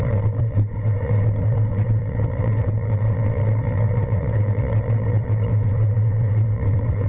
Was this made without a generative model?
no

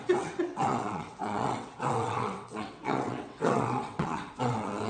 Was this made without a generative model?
no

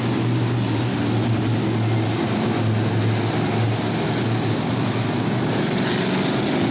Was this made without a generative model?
yes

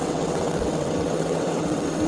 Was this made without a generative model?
no